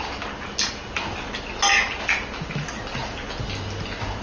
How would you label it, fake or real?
real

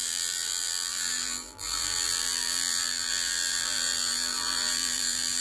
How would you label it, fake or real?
fake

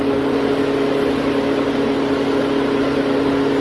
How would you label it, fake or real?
real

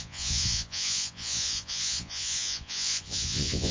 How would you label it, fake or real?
fake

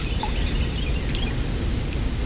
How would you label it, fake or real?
real